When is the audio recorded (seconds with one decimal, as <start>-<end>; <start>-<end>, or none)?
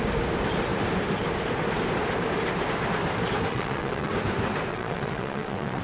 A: 0.0-3.5; 4.1-4.7